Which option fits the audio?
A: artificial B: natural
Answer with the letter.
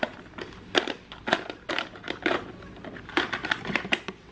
B